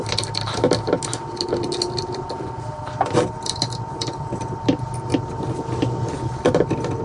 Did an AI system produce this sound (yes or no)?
no